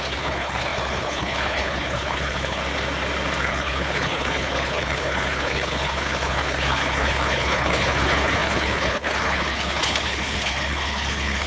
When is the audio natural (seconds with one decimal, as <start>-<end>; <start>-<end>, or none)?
2.6-3.4